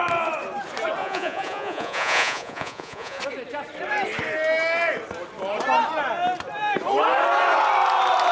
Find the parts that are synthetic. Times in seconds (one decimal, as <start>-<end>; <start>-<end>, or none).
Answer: 1.0-3.2